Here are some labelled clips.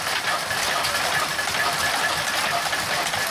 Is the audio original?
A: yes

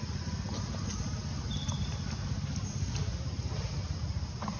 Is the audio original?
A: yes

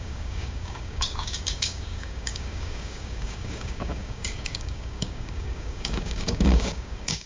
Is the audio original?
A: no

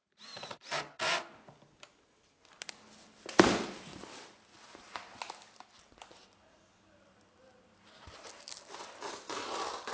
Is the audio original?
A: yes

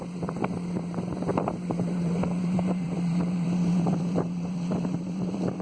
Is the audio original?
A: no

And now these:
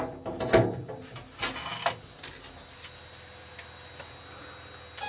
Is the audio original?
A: yes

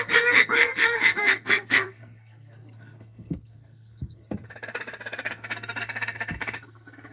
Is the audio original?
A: no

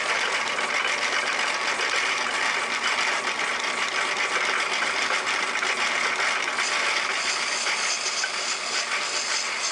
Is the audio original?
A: yes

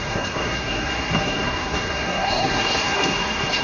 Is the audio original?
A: no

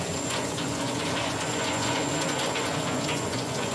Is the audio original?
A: no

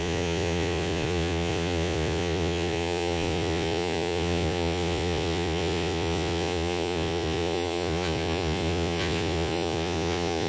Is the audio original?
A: no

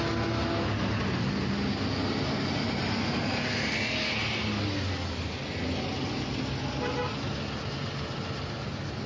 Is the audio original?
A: yes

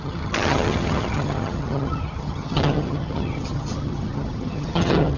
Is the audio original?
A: no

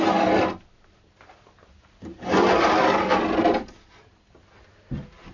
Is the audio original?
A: yes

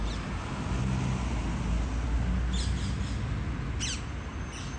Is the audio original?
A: yes